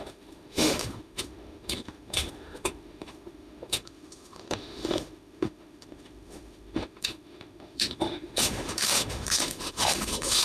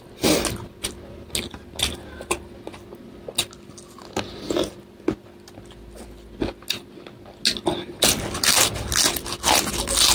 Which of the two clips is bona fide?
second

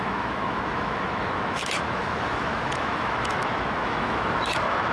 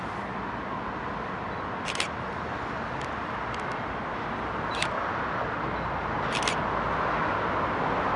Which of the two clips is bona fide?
second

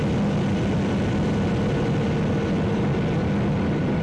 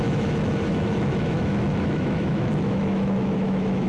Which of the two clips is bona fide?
first